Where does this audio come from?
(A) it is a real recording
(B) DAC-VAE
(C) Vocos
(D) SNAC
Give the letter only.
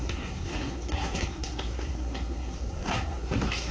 D